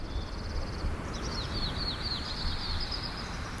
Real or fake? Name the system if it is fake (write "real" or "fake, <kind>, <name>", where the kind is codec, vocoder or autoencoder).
fake, vocoder, BigVGAN v2